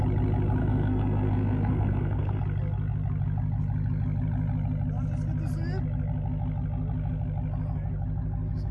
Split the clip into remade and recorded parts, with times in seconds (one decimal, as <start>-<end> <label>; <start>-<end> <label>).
0.0-0.6 recorded; 0.6-2.4 remade; 2.4-8.7 recorded